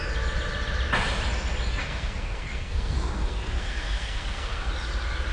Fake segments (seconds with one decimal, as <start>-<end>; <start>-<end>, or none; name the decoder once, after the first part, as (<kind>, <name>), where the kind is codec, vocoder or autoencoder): 1.7-4.7 (codec, SNAC)